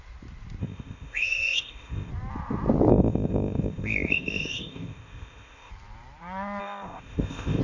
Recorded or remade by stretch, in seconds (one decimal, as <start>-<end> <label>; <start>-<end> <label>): 0.0-0.6 recorded; 0.6-2.1 remade; 2.1-2.9 recorded; 2.9-5.7 remade; 5.7-6.6 recorded; 6.6-7.6 remade